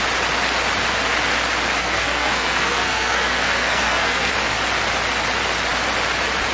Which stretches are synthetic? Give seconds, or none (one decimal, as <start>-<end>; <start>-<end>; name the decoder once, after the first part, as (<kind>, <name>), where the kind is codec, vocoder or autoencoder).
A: 1.8-4.3 (codec, SNAC)